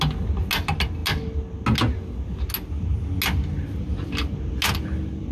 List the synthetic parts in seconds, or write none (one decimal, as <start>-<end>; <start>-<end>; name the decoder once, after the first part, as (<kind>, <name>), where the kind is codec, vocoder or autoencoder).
none